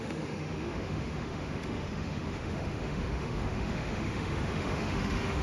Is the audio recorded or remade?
remade